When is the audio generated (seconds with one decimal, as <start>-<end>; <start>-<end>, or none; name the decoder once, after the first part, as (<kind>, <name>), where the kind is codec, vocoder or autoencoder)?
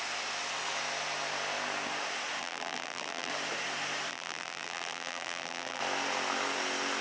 2.4-3.3 (vocoder, BigVGAN v2); 4.1-5.8